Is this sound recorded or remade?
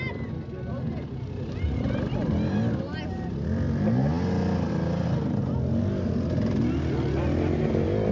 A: recorded